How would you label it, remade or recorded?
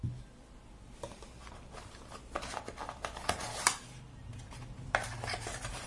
recorded